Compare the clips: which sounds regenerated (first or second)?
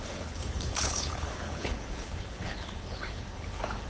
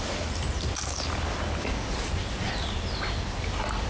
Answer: first